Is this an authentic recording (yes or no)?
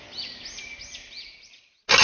yes